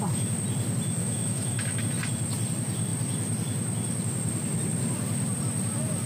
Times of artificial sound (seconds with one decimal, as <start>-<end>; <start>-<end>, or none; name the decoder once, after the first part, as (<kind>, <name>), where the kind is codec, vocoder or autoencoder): 1.0-1.8 (autoencoder, DAC-VAE)